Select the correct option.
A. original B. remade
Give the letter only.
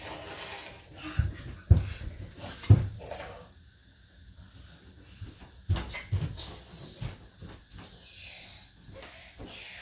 A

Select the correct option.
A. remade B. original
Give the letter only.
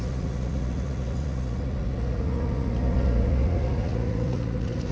A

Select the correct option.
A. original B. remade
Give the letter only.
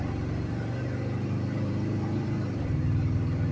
B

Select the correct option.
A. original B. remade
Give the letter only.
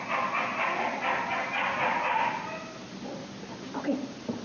A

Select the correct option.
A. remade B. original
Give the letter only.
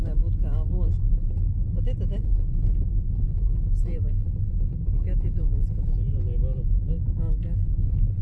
B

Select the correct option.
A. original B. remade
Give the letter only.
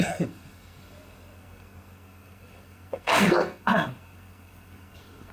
B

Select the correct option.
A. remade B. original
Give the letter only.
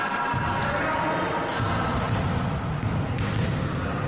B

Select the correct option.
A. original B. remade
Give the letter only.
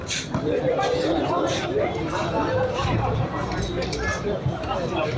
B